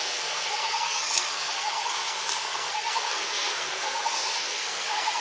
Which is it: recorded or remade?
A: remade